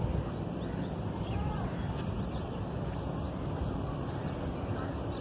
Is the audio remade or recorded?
recorded